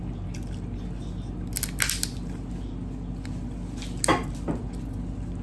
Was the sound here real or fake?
real